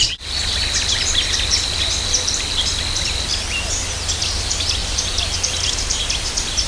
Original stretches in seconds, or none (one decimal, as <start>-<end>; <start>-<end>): none